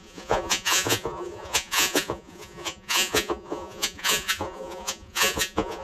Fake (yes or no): yes